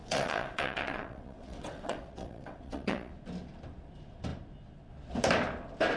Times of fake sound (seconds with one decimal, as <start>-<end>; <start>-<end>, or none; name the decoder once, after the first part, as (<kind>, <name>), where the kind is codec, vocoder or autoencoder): 0.0-3.1 (vocoder, WaveNeXt)